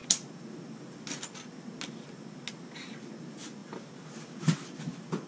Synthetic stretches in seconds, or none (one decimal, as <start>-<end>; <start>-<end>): none